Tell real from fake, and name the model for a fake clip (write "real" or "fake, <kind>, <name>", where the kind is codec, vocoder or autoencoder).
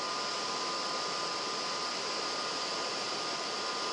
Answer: real